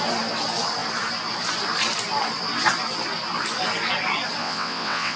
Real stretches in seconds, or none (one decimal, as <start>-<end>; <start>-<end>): 0.0-4.4